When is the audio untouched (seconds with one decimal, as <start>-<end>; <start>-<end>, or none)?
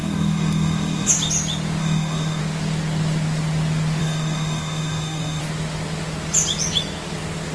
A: 1.1-1.8; 2.4-4.0; 5.4-7.5